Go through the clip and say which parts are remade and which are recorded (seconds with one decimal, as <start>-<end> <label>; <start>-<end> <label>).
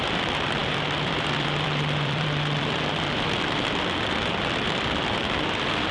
0.0-5.9 remade